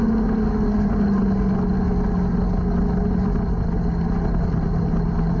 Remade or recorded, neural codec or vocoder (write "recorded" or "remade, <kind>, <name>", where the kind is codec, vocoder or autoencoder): recorded